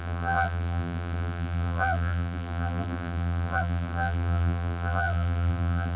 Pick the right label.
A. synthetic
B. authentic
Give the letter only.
A